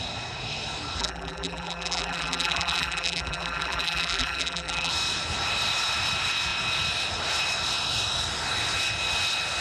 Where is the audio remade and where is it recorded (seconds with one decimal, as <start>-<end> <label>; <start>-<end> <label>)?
0.0-1.0 recorded; 1.0-4.9 remade; 4.9-9.6 recorded

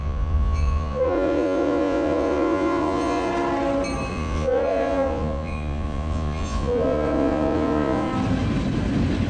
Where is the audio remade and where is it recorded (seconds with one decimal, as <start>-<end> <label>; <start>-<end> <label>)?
0.0-3.3 remade; 3.3-4.1 recorded; 4.1-8.1 remade; 8.1-9.3 recorded

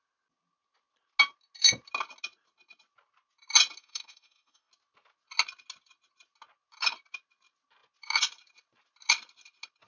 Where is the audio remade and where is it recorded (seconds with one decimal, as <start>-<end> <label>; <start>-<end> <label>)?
0.0-3.8 recorded; 3.8-4.7 remade; 4.7-9.9 recorded

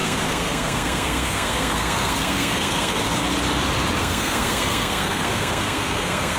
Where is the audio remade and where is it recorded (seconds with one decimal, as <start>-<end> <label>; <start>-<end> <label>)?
0.0-3.0 remade; 3.0-4.0 recorded; 4.0-6.4 remade

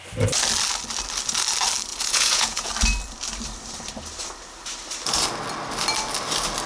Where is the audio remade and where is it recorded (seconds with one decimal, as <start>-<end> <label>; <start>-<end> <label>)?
0.0-1.9 recorded; 1.9-2.7 remade; 2.7-6.7 recorded